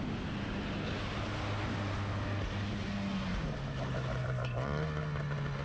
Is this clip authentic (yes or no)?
yes